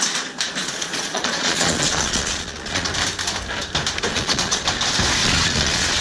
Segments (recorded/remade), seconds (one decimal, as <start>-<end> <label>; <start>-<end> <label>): 0.0-0.6 recorded; 0.6-2.9 remade; 2.9-4.1 recorded; 4.1-4.6 remade; 4.6-5.2 recorded; 5.2-6.0 remade